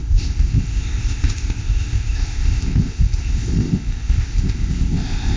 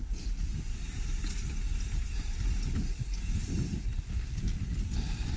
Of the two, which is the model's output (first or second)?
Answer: first